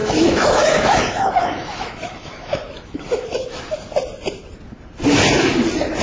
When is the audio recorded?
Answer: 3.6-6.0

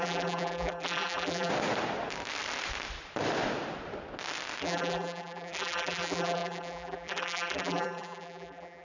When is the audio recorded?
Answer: 1.5-4.6

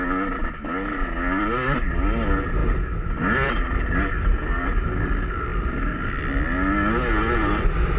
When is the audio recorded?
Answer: 0.0-2.6; 3.5-5.5; 6.2-8.0